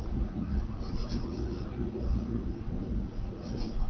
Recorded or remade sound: remade